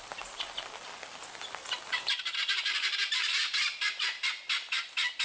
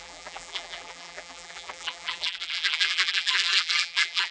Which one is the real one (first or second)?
first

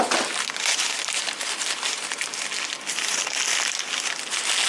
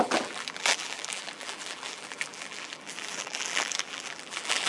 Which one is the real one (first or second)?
first